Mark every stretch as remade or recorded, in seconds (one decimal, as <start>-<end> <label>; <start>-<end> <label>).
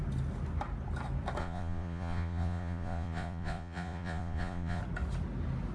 0.0-1.4 recorded; 1.4-4.8 remade; 4.8-5.7 recorded